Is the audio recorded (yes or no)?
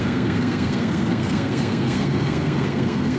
no